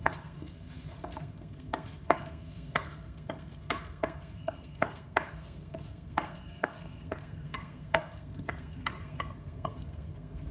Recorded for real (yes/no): no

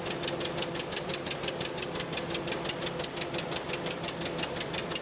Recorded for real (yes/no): yes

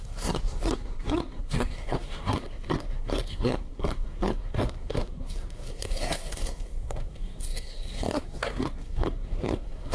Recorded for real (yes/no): no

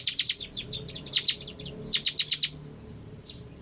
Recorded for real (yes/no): yes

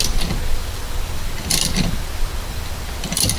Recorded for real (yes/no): yes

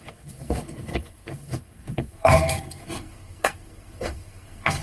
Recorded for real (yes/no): no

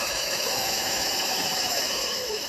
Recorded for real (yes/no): no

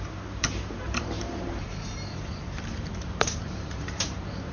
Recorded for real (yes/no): no